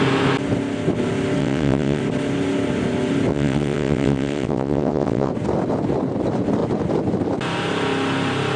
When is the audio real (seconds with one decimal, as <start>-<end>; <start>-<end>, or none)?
0.0-1.4; 2.0-3.3; 5.3-8.6